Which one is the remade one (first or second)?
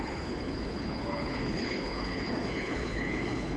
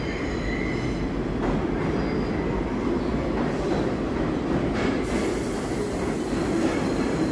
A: first